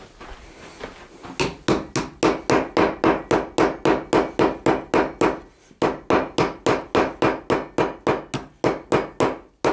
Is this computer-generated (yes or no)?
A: no